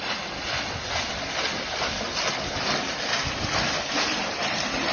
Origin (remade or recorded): recorded